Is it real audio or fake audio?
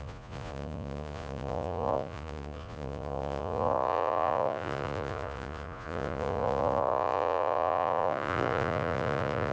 fake